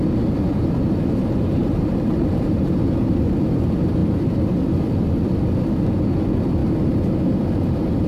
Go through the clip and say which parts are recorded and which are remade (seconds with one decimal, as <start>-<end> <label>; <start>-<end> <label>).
0.0-1.6 recorded; 1.6-2.6 remade; 2.6-8.1 recorded